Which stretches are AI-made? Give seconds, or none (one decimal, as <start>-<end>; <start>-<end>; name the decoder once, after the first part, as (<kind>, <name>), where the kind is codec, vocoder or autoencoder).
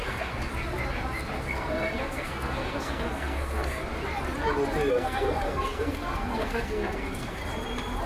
0.0-0.5 (codec, SNAC); 1.4-3.8; 4.9-7.4